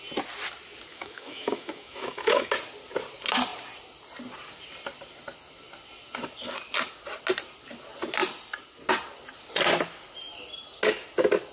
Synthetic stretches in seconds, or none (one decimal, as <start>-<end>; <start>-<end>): 0.9-2.5

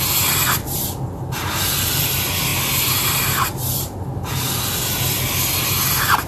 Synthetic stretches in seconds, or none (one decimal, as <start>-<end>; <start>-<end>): 1.4-2.0